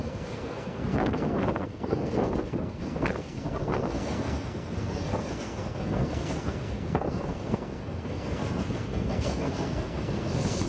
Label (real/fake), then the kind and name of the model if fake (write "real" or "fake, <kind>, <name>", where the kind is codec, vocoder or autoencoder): fake, codec, SNAC